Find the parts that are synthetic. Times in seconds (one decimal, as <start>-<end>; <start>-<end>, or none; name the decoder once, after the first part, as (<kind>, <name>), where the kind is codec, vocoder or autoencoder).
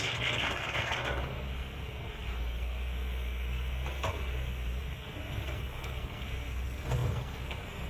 0.0-7.9 (codec, SNAC)